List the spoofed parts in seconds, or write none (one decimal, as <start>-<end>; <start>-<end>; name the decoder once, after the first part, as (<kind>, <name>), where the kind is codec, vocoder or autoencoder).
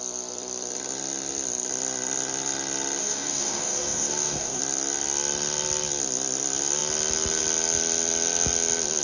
3.0-4.6 (codec, DAC)